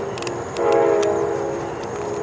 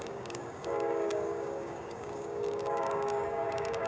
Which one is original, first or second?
first